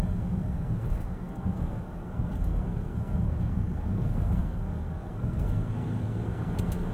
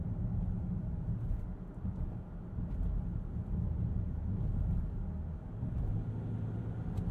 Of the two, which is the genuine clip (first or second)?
second